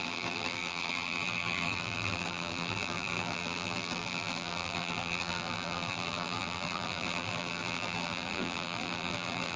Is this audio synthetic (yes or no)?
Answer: yes